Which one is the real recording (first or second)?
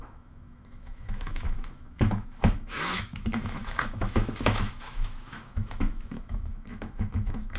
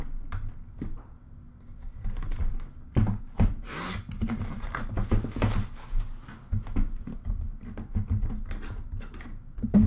second